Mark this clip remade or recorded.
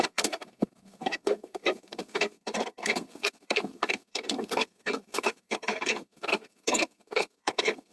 remade